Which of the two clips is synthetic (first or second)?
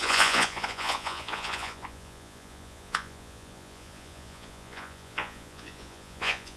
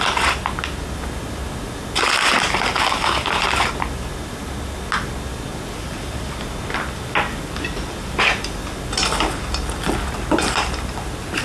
first